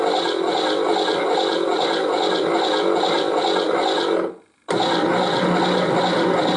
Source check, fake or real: real